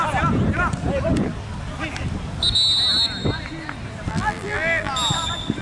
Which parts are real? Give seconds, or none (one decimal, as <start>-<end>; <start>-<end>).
0.0-4.1; 4.9-5.6